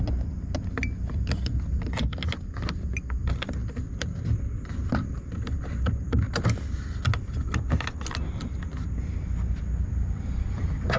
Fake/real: real